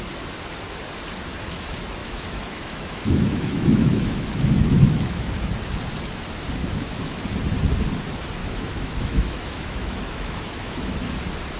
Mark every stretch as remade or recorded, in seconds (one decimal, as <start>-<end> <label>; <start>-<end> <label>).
0.0-2.0 recorded; 2.0-5.3 remade; 5.3-6.6 recorded; 6.6-7.3 remade; 7.3-8.4 recorded; 8.4-11.1 remade; 11.1-11.6 recorded